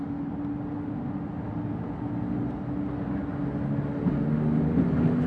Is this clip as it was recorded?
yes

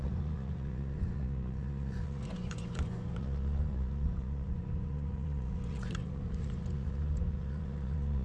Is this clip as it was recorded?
no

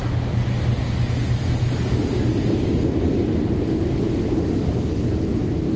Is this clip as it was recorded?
yes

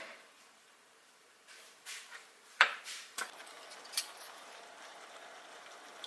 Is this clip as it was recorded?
no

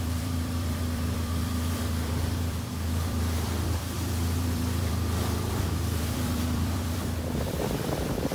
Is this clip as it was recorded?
no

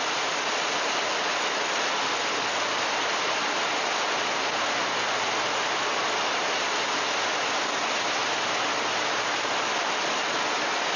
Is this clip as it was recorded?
yes